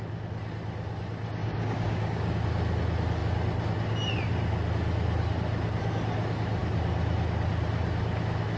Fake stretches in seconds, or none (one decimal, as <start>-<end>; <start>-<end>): 1.4-2.4